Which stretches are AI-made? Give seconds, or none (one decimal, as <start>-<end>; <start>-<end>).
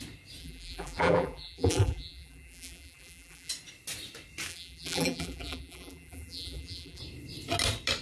0.4-3.5; 4.5-7.0